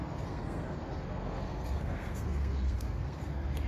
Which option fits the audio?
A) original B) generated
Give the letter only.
B